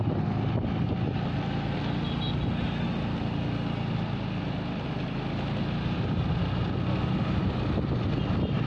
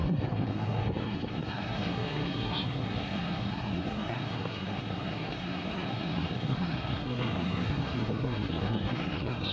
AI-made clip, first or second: second